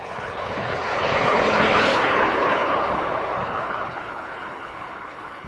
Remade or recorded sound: remade